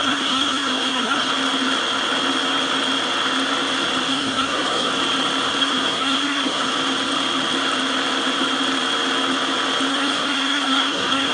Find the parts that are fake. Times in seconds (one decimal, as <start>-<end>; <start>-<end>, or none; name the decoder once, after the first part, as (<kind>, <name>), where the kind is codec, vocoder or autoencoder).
0.0-1.3 (codec, SNAC); 4.1-4.9; 5.6-6.7; 9.9-11.3